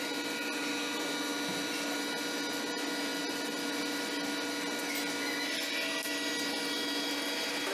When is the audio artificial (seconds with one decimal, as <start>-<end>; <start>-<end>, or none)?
none